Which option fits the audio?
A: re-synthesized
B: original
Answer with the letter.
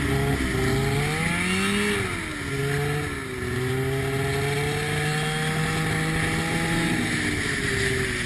B